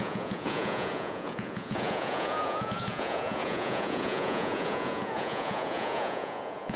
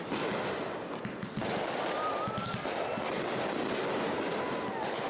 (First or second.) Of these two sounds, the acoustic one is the second